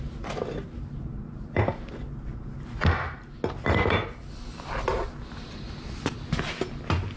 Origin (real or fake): real